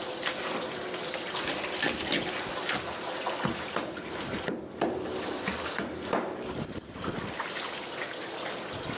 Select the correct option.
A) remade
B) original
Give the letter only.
B